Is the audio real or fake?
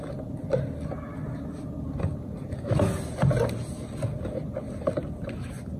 real